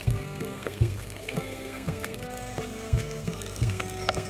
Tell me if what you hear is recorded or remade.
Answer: remade